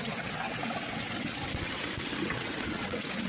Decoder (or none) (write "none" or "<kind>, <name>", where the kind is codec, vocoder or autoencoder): vocoder, WaveNeXt